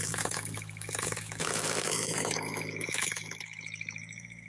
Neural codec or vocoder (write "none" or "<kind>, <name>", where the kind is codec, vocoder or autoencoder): autoencoder, DAC-VAE